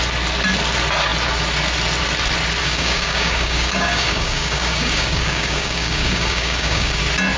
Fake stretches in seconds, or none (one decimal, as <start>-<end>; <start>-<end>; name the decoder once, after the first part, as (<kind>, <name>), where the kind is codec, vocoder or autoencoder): 2.6-7.0 (codec, DAC)